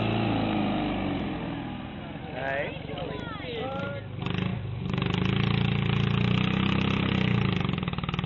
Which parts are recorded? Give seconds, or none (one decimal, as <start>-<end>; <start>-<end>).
0.0-4.5; 7.1-8.3